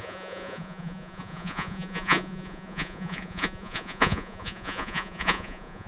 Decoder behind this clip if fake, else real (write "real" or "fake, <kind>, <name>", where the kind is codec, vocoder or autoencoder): fake, vocoder, Vocos